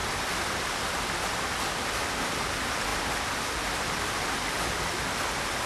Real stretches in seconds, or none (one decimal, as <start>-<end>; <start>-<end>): 0.0-5.7